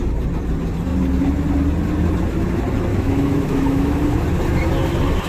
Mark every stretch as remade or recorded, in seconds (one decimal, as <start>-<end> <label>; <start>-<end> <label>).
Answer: 0.0-2.9 recorded; 2.9-4.2 remade; 4.2-5.3 recorded